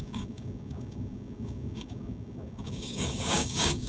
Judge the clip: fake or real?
fake